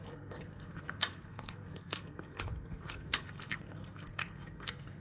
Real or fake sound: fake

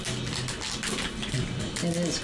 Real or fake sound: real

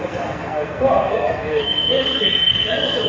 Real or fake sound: fake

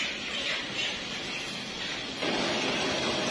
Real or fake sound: real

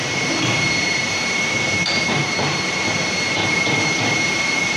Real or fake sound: fake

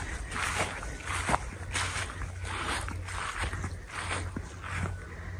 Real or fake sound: real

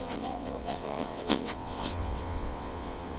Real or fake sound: fake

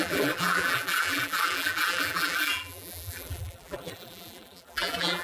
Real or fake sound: fake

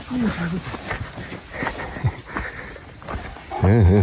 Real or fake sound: real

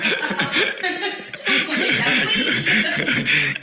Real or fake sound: real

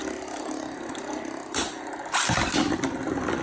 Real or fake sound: real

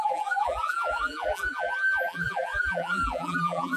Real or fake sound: fake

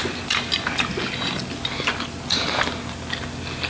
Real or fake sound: real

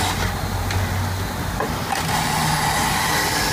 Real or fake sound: real